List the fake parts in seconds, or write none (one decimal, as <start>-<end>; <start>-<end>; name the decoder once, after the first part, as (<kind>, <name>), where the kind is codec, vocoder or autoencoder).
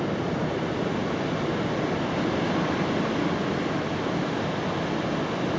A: none